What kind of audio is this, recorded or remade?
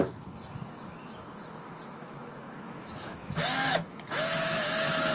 remade